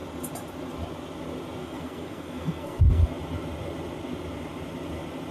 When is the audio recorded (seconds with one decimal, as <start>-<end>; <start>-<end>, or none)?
0.0-1.6; 3.1-5.3